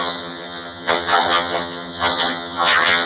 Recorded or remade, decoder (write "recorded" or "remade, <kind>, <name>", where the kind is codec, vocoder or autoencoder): remade, vocoder, HiFi-GAN